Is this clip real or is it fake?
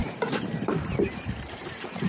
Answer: fake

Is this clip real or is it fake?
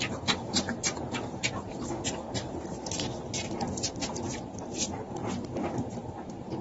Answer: fake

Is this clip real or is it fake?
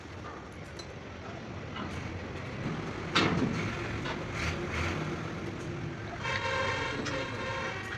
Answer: real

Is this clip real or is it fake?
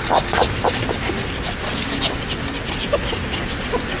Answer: real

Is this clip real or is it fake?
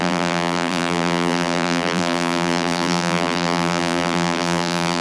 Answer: fake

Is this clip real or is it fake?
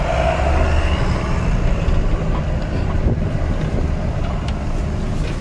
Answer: real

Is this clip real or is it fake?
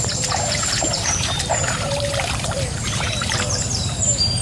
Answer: fake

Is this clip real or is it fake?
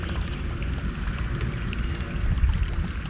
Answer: fake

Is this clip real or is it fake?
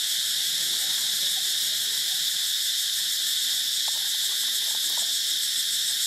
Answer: fake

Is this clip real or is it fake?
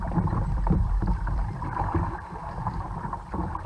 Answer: fake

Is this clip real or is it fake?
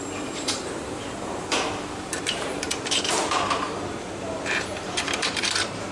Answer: fake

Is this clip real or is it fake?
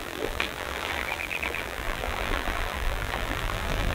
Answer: fake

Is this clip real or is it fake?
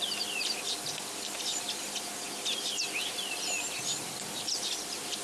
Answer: fake